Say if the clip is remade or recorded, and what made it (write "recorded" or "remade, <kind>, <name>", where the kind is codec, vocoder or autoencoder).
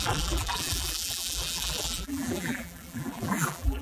remade, vocoder, BigVGAN v2